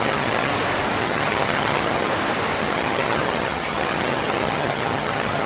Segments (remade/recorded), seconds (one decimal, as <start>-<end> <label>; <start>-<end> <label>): 0.0-0.5 remade; 0.5-1.0 recorded; 1.0-2.1 remade; 2.1-2.6 recorded; 2.6-5.5 remade